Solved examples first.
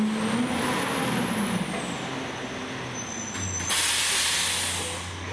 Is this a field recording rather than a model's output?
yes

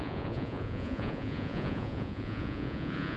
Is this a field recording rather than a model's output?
no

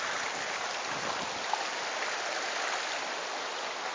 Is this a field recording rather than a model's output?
yes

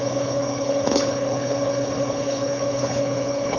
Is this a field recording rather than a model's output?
no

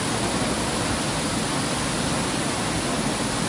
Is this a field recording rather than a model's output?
yes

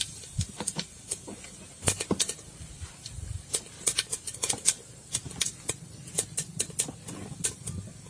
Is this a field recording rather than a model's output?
yes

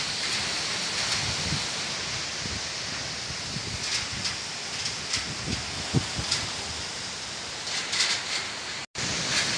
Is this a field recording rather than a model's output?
yes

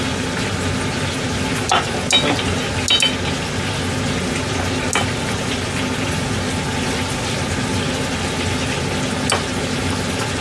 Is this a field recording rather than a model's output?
yes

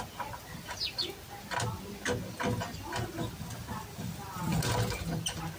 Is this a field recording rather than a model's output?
yes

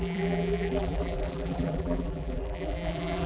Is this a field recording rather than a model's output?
no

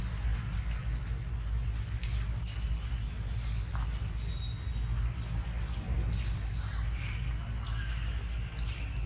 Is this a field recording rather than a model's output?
yes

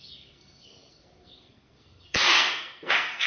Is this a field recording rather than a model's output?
no